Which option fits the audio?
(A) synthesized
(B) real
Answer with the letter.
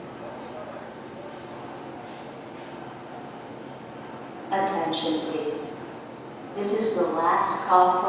B